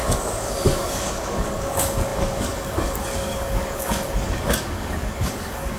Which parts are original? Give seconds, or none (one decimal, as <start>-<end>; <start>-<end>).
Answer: none